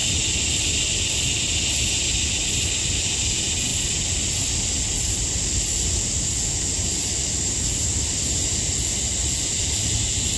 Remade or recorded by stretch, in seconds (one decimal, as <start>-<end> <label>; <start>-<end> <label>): 0.0-10.4 recorded